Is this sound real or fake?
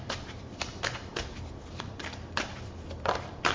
fake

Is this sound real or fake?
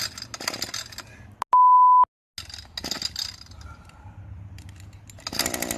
real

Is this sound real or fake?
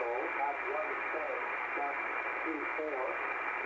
real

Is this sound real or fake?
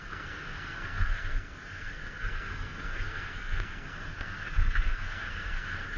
fake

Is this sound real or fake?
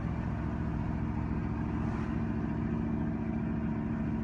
real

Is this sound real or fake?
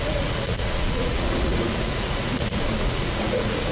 fake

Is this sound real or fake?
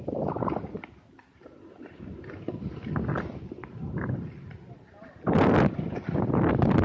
real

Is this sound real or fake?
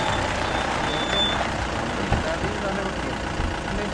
real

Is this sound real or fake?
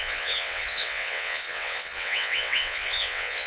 fake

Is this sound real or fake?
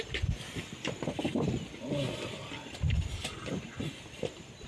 real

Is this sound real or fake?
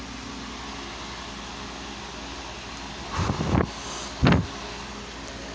real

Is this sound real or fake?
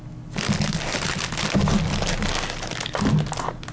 real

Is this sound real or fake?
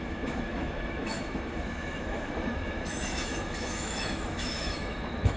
fake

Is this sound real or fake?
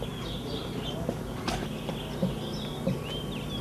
real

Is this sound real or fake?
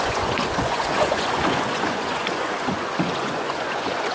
fake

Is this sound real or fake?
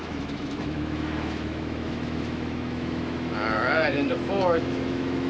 fake